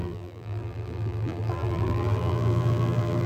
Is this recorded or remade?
remade